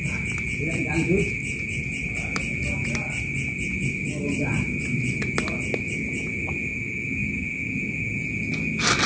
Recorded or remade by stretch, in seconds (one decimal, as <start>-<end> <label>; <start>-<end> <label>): 0.0-9.1 recorded